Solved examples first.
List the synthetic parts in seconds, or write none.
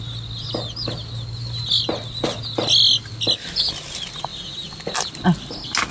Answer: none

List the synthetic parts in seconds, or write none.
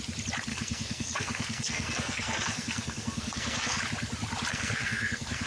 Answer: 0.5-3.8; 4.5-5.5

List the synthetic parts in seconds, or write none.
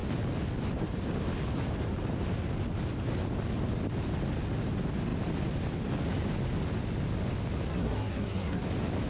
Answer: 7.7-8.6